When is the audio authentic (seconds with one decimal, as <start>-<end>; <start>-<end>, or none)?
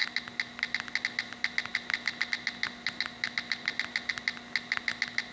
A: 0.0-5.3